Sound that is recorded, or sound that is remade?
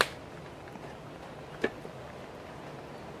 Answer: recorded